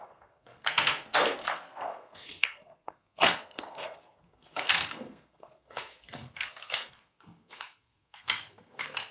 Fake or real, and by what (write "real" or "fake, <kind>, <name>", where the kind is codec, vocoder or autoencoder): fake, codec, SNAC